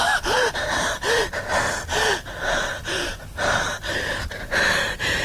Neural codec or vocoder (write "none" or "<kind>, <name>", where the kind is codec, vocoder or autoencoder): vocoder, BigVGAN v2